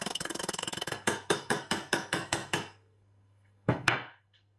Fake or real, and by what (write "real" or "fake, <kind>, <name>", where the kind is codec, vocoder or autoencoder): fake, codec, SNAC